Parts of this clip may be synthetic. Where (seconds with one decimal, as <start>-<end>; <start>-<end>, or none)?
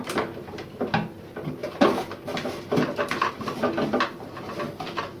none